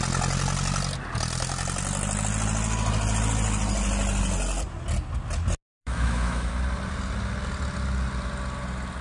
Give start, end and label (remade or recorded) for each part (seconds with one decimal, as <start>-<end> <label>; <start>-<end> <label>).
0.0-5.7 recorded; 5.7-6.5 remade; 6.5-9.0 recorded